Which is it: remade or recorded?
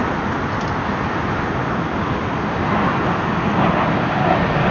recorded